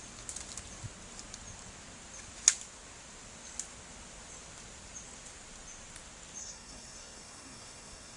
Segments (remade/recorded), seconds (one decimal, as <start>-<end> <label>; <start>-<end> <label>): 0.0-6.4 recorded; 6.4-8.2 remade